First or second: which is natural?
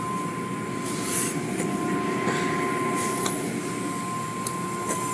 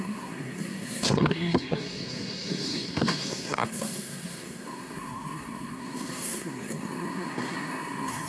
first